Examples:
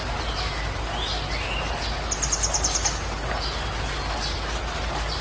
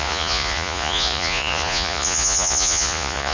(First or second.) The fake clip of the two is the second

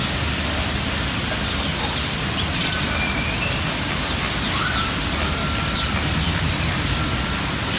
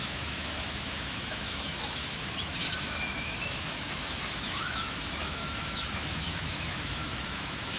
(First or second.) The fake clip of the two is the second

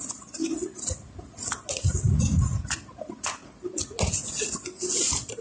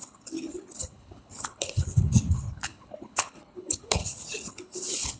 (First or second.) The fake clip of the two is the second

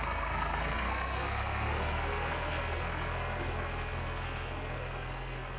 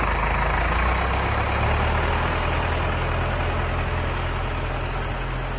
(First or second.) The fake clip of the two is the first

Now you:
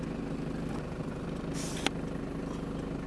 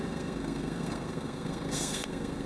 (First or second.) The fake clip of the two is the second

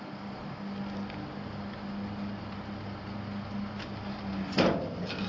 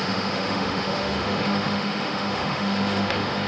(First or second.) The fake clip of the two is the second